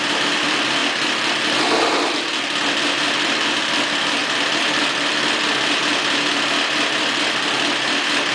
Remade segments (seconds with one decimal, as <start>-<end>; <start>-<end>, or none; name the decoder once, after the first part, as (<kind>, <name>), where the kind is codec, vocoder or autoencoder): none

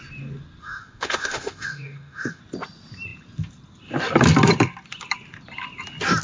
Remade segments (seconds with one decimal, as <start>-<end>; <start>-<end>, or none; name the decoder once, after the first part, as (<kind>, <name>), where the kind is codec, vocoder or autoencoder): 0.6-2.4 (autoencoder, DAC-VAE)